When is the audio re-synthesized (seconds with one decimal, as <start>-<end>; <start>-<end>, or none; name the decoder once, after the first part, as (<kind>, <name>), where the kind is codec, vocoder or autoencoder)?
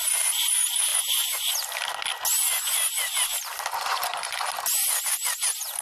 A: none